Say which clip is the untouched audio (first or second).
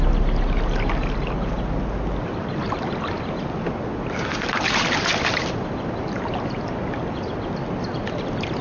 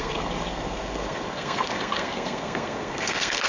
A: first